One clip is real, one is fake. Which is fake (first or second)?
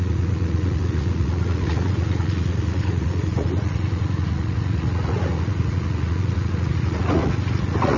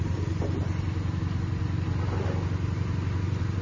first